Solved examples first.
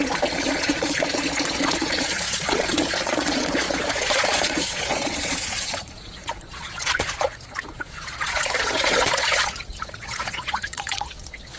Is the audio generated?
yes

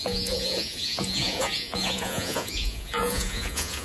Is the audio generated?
yes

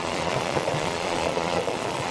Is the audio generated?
yes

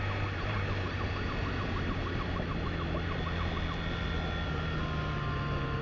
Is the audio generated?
no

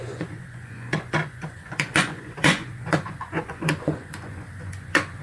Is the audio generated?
yes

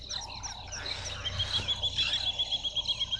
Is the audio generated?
no